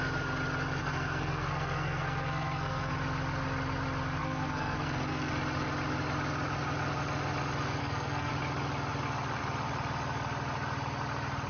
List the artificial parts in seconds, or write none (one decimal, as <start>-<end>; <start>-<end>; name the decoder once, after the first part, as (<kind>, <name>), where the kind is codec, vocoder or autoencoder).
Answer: 0.8-2.9 (codec, SNAC); 4.2-5.3; 7.8-8.3